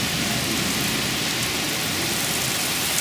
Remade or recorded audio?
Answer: recorded